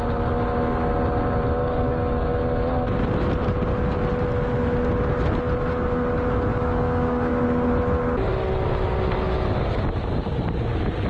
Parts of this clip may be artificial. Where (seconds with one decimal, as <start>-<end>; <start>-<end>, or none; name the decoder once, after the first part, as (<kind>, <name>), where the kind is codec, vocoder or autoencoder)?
1.6-2.3 (codec, DAC); 6.5-7.3